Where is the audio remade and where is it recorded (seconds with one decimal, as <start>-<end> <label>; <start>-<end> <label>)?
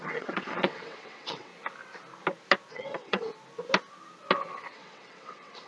0.0-1.5 remade; 1.5-2.7 recorded; 2.7-3.3 remade; 3.3-4.7 recorded; 4.7-5.7 remade